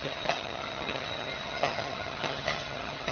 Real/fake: fake